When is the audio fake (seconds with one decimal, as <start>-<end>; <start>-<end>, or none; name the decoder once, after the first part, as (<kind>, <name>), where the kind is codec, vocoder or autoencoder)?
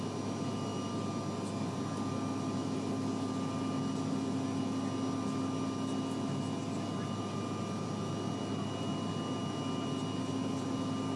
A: none